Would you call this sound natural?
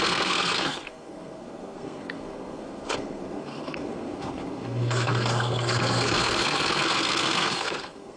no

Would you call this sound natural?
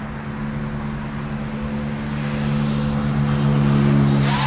yes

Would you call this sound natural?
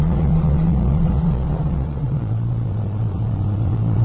no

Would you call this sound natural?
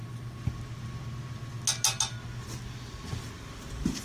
yes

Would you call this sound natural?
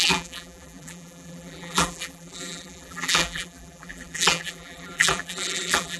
no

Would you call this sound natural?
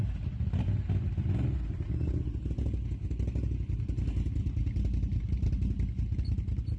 yes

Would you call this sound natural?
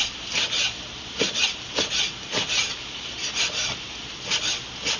yes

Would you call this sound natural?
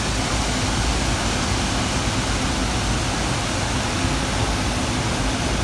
yes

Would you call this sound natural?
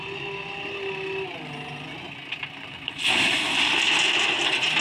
yes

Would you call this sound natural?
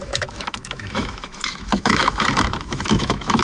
no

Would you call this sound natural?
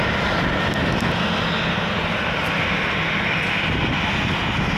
yes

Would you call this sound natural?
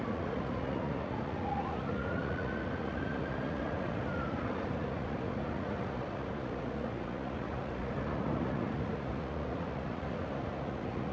no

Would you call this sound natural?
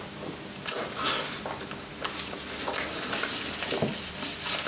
yes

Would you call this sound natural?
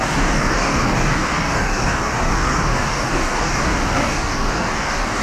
no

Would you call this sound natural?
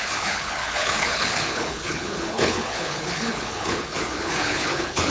no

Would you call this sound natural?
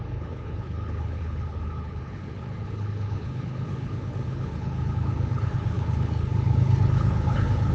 no